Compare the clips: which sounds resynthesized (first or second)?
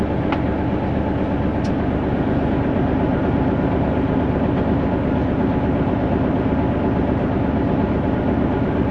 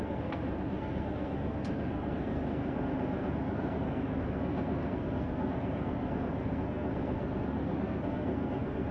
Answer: second